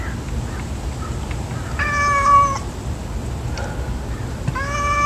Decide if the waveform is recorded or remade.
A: recorded